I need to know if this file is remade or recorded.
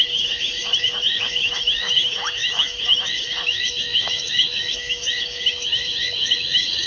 remade